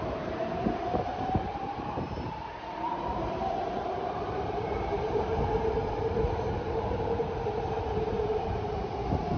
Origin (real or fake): fake